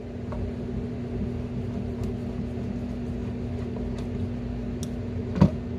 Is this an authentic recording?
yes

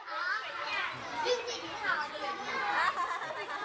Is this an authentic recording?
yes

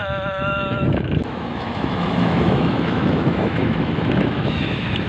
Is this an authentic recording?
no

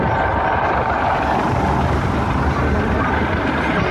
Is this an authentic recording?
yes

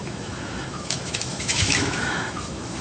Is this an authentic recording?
no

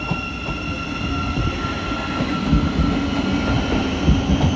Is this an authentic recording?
yes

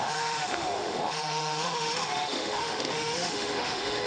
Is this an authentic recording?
no